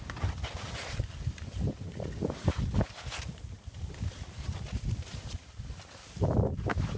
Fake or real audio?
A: real